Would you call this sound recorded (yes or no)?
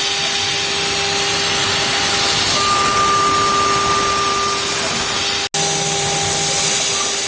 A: yes